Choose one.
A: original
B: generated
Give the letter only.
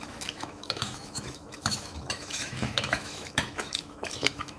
B